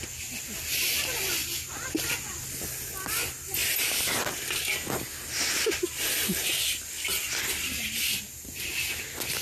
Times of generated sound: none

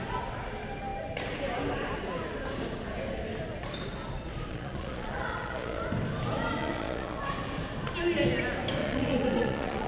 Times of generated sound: 4.5-5.8 (vocoder, Vocos); 6.6-7.2; 8.8-9.9

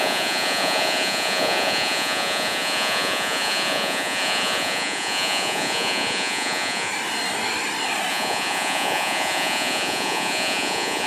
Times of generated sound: 0.0-6.9 (vocoder, Vocos); 8.1-11.1

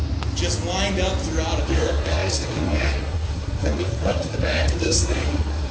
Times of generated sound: 1.6-5.7 (codec, SNAC)

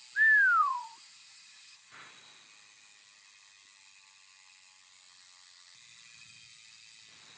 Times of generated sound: 0.6-2.1 (vocoder, Vocos)